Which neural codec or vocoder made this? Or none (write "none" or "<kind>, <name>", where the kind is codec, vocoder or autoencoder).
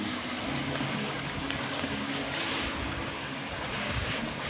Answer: codec, DAC